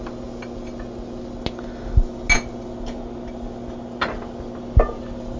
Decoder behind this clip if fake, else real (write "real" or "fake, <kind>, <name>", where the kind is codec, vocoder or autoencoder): real